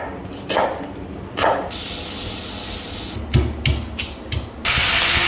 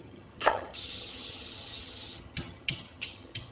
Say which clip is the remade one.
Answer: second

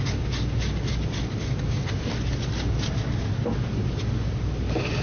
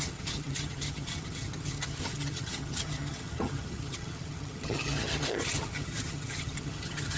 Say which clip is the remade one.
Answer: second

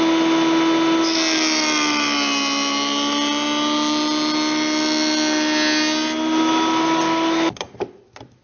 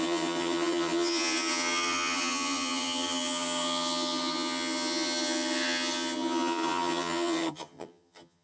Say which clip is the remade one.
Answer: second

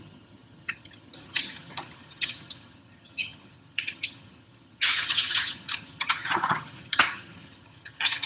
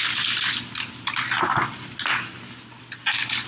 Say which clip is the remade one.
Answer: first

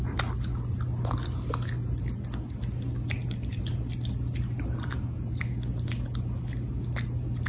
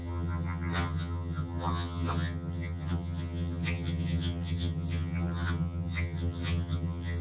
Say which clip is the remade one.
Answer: second